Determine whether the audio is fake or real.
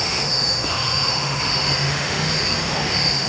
fake